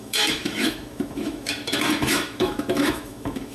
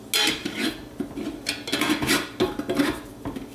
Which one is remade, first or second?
first